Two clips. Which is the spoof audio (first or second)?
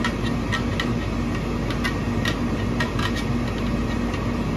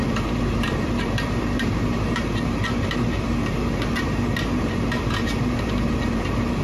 second